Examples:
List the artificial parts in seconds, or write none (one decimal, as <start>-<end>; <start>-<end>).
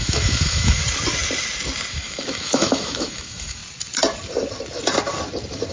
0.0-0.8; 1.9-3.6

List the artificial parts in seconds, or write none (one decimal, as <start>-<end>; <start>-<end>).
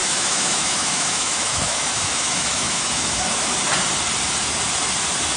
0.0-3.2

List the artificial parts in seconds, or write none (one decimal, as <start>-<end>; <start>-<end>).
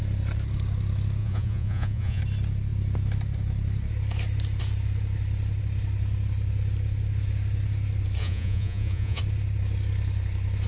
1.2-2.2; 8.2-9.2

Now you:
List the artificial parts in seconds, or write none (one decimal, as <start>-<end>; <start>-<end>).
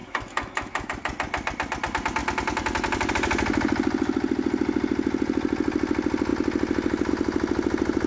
0.0-0.9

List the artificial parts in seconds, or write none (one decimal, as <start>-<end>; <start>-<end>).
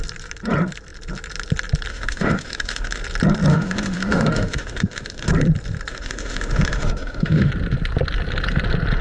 1.9-3.0; 3.5-5.3; 5.9-7.5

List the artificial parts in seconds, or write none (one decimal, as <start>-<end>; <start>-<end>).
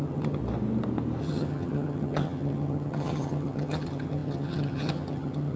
0.0-0.4; 1.2-5.6